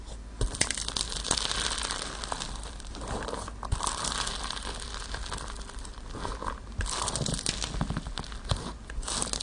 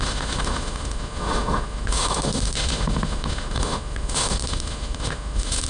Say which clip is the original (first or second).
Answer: first